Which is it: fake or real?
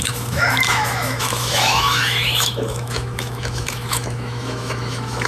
fake